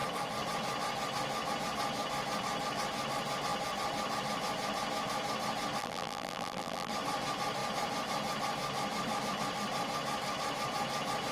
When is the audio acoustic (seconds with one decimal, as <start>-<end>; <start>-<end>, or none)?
0.0-5.8; 6.9-11.3